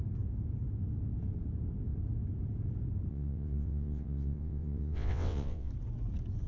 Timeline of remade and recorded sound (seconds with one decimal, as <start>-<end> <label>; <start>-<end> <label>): 0.0-3.1 recorded; 3.1-5.7 remade; 5.7-6.5 recorded